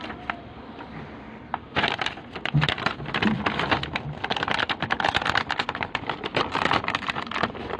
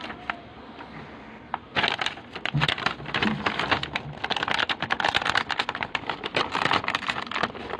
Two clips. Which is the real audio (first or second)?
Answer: second